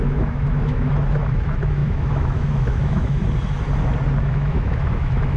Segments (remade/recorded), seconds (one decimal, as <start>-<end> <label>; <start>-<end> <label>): 0.0-3.2 remade; 3.2-4.2 recorded; 4.2-5.4 remade